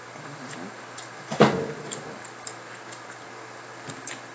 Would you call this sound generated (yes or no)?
no